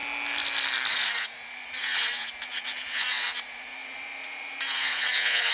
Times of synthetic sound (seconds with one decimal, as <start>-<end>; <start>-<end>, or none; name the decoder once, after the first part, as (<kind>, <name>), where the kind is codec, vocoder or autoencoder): 0.9-5.5 (vocoder, Vocos)